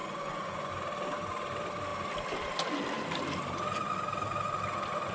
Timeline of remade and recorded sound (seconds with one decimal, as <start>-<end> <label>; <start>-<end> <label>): 0.0-0.7 remade; 0.7-5.1 recorded